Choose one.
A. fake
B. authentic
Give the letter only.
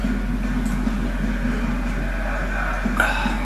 B